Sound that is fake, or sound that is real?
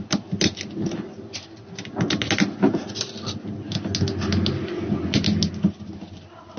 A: real